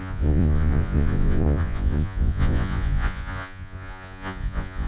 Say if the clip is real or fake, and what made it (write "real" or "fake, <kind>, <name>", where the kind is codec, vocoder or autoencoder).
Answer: fake, vocoder, Vocos